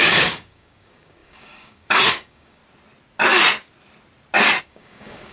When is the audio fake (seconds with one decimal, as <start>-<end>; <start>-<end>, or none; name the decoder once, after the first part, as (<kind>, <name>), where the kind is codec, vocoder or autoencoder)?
0.0-2.6 (codec, DAC); 4.6-5.3